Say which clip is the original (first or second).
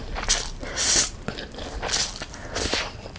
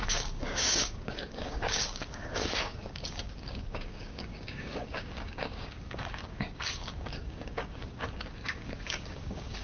first